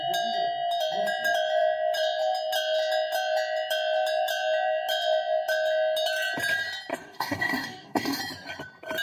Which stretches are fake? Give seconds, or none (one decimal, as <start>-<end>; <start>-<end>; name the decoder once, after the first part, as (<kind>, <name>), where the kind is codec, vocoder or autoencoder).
6.9-8.2 (codec, DAC)